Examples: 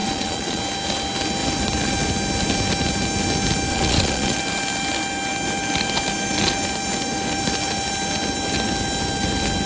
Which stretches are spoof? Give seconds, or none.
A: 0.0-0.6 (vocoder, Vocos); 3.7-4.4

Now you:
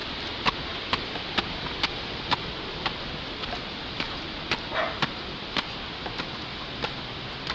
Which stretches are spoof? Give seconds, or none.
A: none

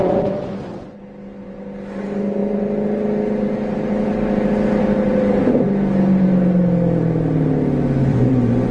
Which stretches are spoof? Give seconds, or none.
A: 0.0-1.0 (vocoder, Vocos); 8.1-8.7